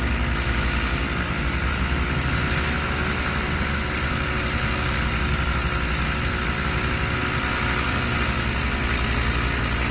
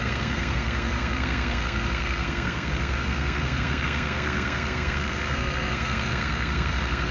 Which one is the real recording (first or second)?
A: first